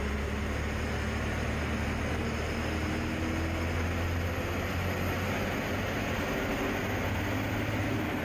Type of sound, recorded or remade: recorded